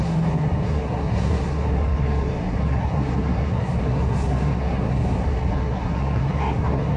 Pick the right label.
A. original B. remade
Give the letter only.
B